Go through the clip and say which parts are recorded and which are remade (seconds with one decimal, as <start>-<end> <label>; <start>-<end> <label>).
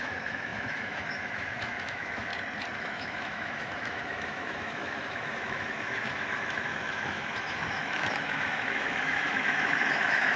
0.0-2.3 remade; 2.3-2.8 recorded; 2.8-10.4 remade